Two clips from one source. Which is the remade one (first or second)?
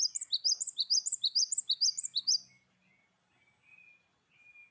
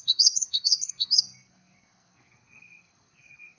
second